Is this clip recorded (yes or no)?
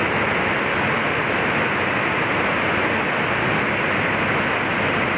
yes